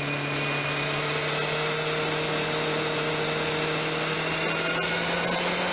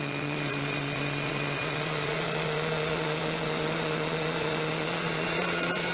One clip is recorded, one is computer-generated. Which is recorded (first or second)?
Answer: first